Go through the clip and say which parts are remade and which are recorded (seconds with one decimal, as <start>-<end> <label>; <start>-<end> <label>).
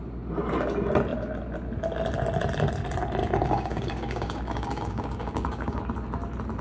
0.0-3.2 recorded; 3.2-5.8 remade; 5.8-6.6 recorded